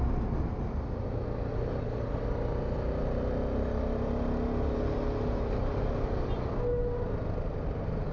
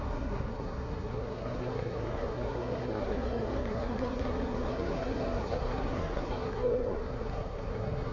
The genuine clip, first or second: first